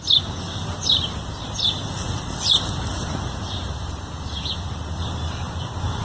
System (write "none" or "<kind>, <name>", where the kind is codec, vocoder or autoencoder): none